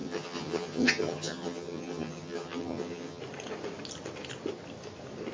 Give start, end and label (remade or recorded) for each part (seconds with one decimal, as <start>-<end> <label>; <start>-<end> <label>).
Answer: 0.0-3.2 remade; 3.2-5.3 recorded